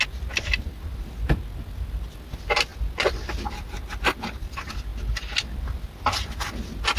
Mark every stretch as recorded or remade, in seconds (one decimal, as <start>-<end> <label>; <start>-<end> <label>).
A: 0.0-7.0 recorded

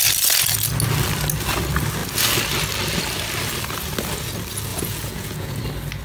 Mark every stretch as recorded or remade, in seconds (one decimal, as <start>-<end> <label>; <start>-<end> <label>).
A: 0.0-4.7 recorded; 4.7-5.6 remade; 5.6-6.0 recorded